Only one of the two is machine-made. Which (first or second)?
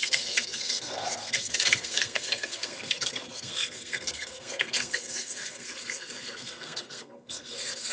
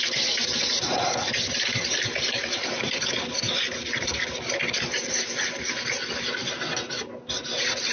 first